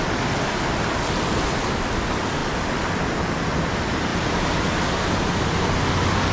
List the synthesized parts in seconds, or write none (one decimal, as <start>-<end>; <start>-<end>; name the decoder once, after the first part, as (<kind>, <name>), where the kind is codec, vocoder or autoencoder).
none